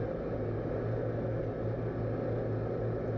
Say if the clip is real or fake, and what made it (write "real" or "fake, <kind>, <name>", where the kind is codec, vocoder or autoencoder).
real